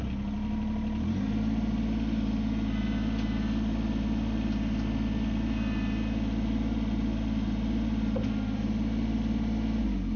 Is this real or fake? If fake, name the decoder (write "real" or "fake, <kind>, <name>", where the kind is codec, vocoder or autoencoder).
real